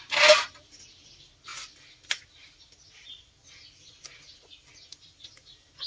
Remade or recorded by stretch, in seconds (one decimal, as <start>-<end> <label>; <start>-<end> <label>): 0.0-5.9 recorded